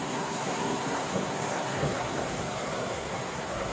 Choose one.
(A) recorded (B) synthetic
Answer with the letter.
B